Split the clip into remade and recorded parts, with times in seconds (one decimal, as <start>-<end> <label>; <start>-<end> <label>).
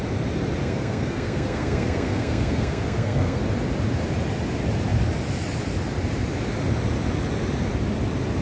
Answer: 0.0-0.6 recorded; 0.6-3.4 remade; 3.4-8.4 recorded